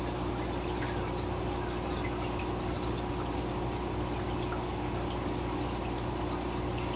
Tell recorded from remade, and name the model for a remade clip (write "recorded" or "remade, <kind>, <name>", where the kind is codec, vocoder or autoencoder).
recorded